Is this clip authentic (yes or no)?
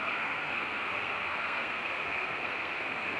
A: no